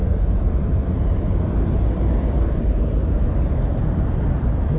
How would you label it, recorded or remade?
remade